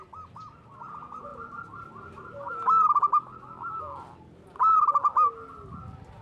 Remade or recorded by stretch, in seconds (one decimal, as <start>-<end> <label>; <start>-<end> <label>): 0.0-6.2 recorded